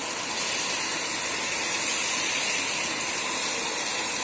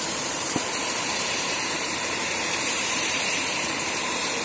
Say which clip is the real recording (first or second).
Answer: first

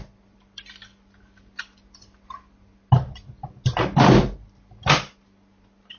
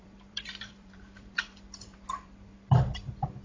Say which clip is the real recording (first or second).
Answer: first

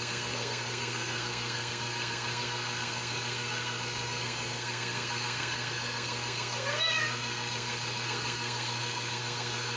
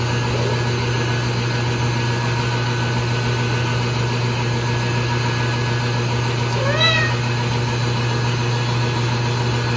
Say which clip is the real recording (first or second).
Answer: second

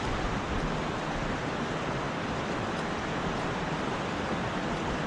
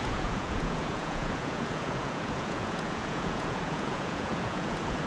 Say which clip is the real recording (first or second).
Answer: first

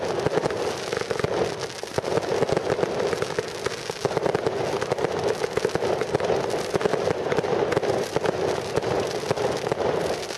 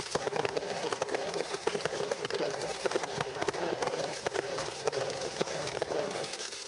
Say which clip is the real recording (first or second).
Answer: first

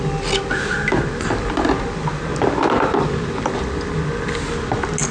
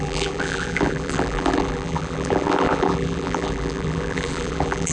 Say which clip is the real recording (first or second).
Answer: first